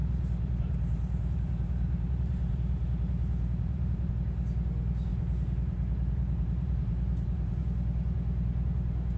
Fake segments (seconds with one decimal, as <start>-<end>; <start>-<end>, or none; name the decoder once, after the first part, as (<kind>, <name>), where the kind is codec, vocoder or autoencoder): 0.0-4.1 (vocoder, BigVGAN v2); 5.1-7.6